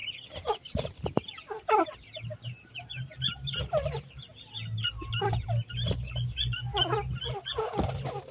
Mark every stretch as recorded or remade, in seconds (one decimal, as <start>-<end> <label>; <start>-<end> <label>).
0.0-4.3 remade; 4.3-5.2 recorded; 5.2-6.7 remade; 6.7-7.6 recorded; 7.6-8.3 remade

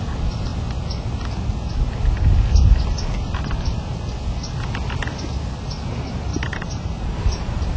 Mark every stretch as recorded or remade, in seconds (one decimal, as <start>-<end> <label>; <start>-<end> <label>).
0.0-6.3 recorded; 6.3-7.8 remade

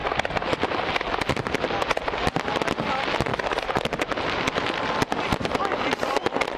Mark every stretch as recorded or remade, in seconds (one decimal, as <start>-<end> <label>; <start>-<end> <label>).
0.0-0.9 remade; 0.9-3.3 recorded; 3.3-5.8 remade; 5.8-6.6 recorded